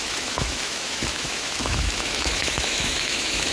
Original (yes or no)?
no